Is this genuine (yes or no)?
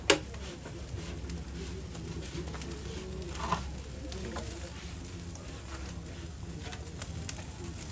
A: yes